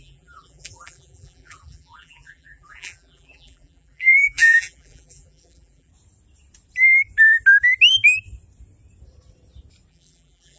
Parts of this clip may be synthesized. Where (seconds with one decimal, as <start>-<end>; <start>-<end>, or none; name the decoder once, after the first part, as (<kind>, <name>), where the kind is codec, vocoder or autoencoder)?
0.0-5.9 (vocoder, BigVGAN v2); 9.9-10.6